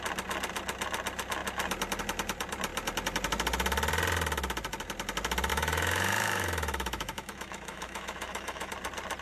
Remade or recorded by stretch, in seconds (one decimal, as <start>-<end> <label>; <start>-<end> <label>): 0.0-5.5 recorded; 5.5-8.7 remade; 8.7-9.2 recorded